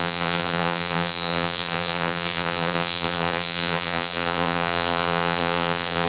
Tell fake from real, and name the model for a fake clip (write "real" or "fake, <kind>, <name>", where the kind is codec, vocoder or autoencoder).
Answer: fake, vocoder, BigVGAN v2